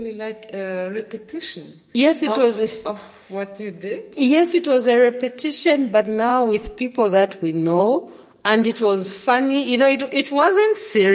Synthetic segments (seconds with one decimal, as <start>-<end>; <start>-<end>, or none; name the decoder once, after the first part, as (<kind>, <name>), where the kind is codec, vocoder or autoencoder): 0.0-11.1 (codec, SNAC)